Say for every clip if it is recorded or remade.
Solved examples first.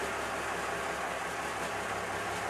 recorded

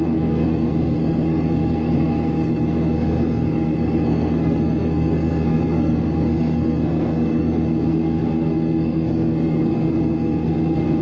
remade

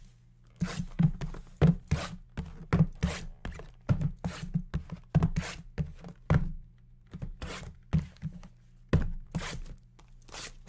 recorded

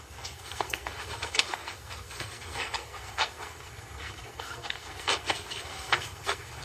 remade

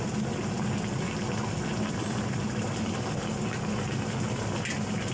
recorded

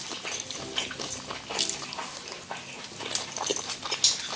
recorded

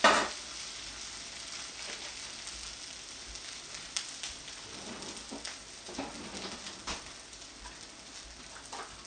recorded